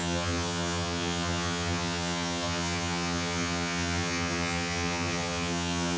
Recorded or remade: remade